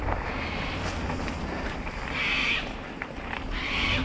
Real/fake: real